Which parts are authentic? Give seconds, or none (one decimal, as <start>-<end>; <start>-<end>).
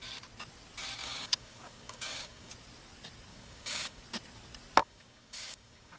0.0-1.0; 2.5-3.3; 4.0-4.8